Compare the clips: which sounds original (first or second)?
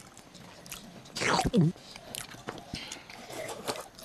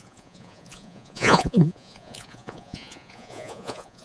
first